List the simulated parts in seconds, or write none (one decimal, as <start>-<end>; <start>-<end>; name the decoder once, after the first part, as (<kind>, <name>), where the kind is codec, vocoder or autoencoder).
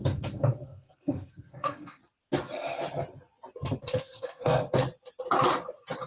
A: 0.0-2.0 (codec, SNAC); 3.8-4.6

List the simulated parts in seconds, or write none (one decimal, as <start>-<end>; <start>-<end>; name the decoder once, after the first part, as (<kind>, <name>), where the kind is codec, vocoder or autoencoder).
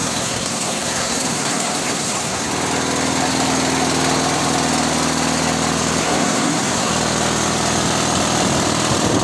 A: 0.0-2.5 (codec, SNAC); 6.0-6.9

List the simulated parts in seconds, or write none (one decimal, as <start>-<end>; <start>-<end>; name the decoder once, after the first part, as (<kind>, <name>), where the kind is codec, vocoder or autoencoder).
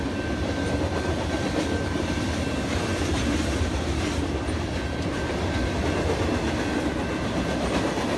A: none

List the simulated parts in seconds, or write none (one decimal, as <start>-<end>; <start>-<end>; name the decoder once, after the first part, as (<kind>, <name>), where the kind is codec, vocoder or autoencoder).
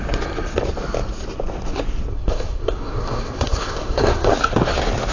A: 2.1-4.3 (codec, SNAC)